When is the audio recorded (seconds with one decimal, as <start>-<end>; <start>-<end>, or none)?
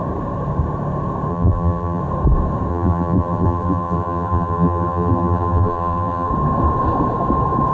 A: 0.0-1.3; 2.0-2.7; 6.3-7.7